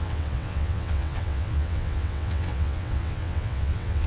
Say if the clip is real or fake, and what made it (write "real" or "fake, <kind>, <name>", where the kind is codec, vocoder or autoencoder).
fake, vocoder, WaveNeXt